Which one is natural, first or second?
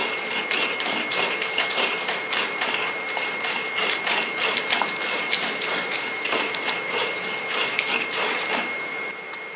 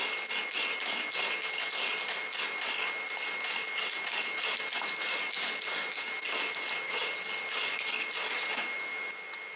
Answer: second